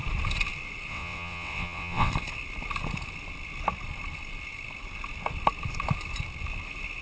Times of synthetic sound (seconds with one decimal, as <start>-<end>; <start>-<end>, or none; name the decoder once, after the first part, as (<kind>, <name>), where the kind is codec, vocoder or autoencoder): 0.9-2.1 (vocoder, WaveNeXt)